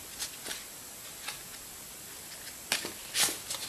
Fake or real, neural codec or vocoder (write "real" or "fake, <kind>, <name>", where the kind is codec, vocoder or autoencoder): real